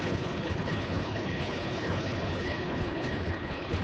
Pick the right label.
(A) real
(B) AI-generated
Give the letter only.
B